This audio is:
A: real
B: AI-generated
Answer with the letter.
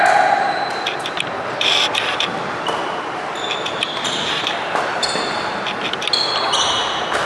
A